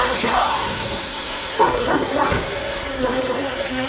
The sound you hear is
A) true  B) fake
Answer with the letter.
B